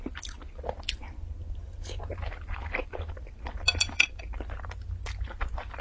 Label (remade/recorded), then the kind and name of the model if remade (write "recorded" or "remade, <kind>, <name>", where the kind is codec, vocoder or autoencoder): recorded